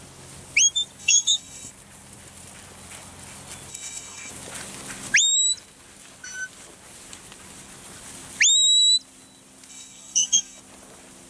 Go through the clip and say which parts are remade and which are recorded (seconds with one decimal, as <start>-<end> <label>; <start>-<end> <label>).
0.0-1.0 recorded; 1.0-1.7 remade; 1.7-3.7 recorded; 3.7-4.3 remade; 4.3-9.7 recorded; 9.7-10.6 remade; 10.6-11.3 recorded